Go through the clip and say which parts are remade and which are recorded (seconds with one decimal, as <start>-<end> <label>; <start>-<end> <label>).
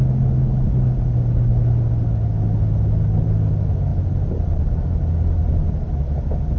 0.0-6.6 recorded